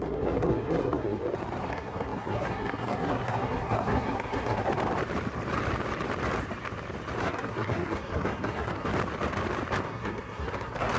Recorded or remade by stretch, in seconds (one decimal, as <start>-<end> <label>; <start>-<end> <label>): 0.0-1.2 remade; 1.2-1.7 recorded; 1.7-4.7 remade; 4.7-7.2 recorded; 7.2-8.9 remade; 8.9-9.8 recorded; 9.8-11.0 remade